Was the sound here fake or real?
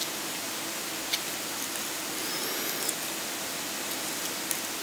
real